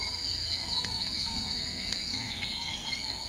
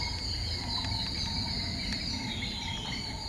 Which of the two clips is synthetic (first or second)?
first